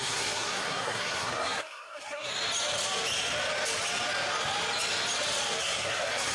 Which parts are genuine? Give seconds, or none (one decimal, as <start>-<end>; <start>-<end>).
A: 2.3-5.6